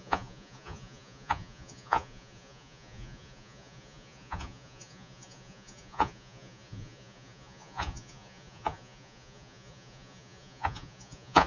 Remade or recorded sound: remade